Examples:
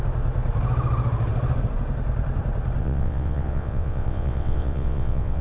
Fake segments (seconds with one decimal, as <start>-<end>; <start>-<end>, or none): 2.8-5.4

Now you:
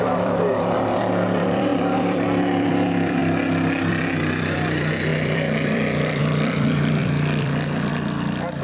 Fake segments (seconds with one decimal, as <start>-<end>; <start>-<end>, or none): 0.0-3.2; 3.9-8.6

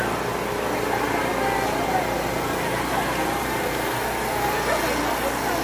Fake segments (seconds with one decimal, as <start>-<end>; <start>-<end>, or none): none

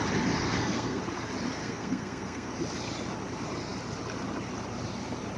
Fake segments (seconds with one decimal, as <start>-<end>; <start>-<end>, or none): 0.4-1.0; 1.6-2.5

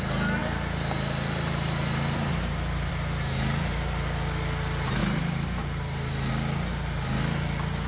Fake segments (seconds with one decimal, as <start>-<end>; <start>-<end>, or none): 0.4-2.9; 5.0-6.3

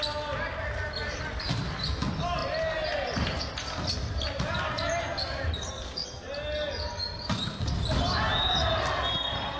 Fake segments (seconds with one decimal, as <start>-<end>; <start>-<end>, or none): 2.4-3.4

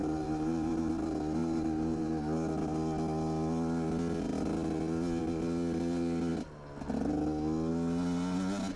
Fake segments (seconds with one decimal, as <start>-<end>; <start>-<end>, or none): 0.0-0.9; 1.4-2.1

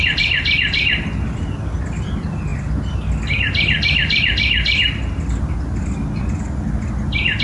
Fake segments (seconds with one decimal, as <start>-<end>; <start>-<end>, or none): none